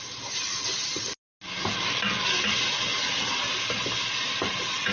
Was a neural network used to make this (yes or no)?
no